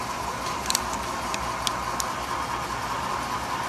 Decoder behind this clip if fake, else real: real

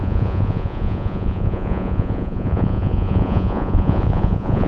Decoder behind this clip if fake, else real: fake, vocoder, Vocos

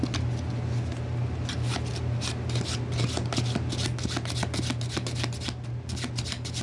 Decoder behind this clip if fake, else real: real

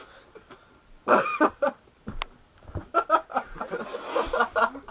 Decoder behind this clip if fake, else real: real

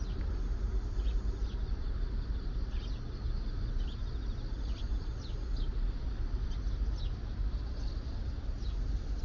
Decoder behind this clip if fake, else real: real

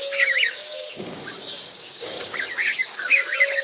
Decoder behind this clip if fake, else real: fake, codec, DAC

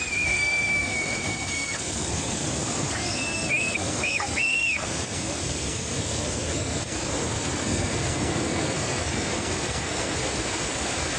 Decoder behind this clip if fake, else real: fake, codec, SNAC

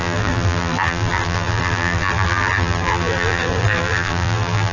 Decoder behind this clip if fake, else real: fake, vocoder, BigVGAN v2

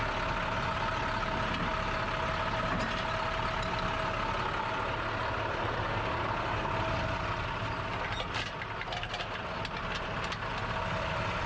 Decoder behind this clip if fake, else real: real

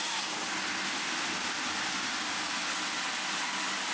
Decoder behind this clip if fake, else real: real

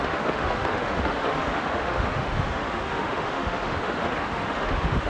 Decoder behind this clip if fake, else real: fake, autoencoder, DAC-VAE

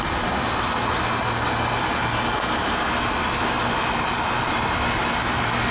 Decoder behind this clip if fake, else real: real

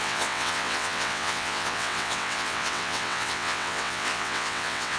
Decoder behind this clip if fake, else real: fake, vocoder, WaveNeXt